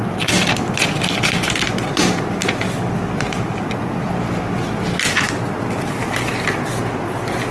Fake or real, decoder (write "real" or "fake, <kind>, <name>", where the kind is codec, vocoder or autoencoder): real